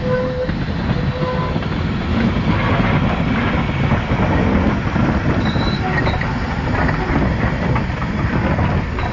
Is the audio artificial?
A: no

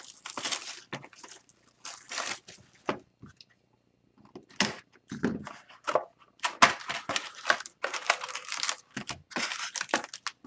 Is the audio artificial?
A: no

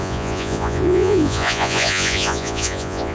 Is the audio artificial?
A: yes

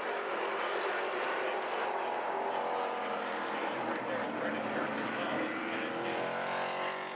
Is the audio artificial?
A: yes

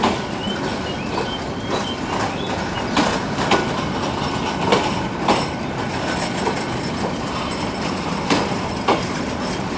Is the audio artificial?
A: no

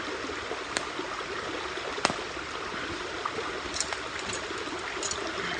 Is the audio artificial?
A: no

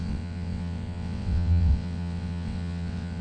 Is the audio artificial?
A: yes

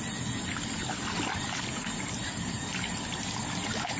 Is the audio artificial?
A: no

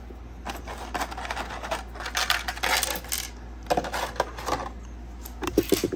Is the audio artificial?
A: no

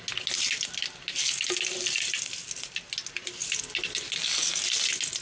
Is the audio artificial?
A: no